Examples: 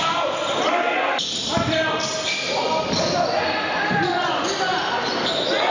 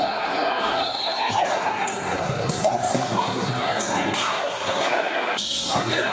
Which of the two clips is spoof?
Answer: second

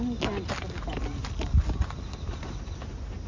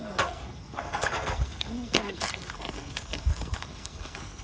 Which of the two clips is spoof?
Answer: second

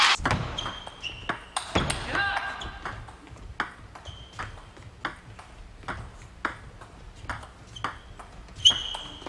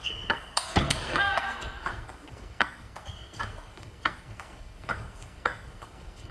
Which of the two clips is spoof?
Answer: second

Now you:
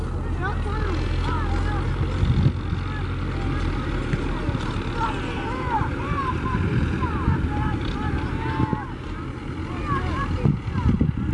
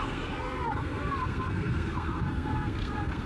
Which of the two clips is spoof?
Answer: second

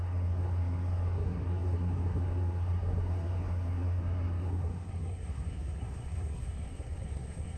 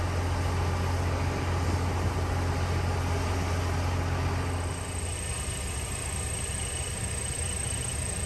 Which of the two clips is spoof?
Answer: first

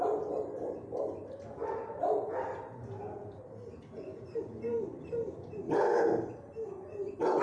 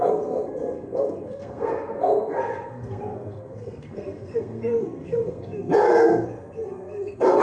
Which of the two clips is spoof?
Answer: second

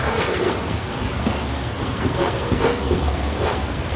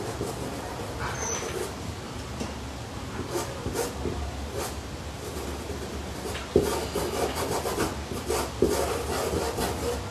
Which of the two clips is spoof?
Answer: first